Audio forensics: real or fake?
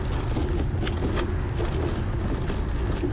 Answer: real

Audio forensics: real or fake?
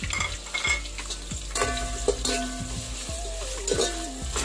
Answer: real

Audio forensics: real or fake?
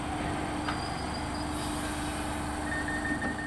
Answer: real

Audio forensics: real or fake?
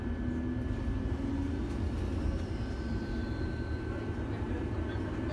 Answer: real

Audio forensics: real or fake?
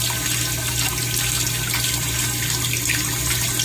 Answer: real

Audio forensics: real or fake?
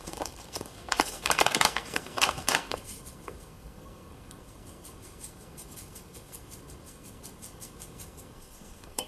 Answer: fake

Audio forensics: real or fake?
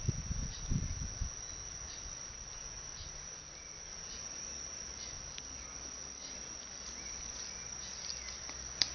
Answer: real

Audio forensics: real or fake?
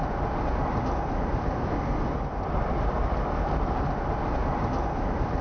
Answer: real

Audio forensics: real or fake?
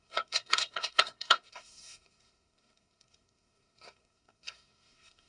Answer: fake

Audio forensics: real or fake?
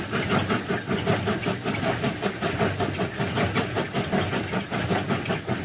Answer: real